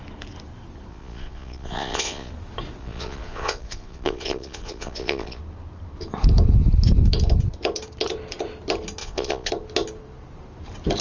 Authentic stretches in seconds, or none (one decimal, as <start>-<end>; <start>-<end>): 0.0-0.9; 2.3-2.8; 5.4-9.0; 9.5-11.0